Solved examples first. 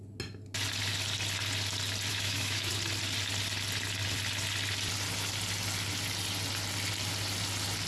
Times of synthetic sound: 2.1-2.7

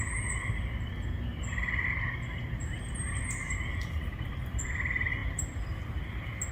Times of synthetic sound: none